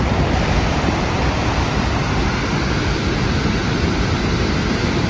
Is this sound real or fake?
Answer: fake